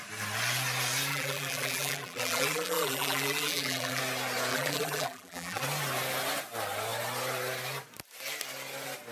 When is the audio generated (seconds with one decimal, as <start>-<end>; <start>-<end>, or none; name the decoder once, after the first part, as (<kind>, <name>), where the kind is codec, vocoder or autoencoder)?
1.1-4.0 (vocoder, BigVGAN v2); 4.5-5.6

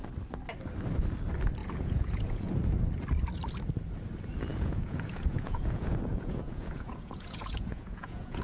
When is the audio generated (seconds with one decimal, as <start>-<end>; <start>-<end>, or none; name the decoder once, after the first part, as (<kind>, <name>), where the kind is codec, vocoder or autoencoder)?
1.6-2.5 (vocoder, Vocos); 4.5-8.4